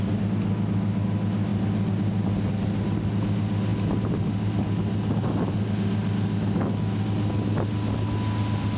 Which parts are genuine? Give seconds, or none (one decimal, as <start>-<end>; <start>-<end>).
0.0-8.8